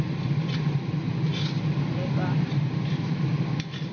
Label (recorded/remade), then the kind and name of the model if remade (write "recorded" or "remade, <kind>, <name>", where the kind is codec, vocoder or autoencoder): remade, vocoder, BigVGAN v2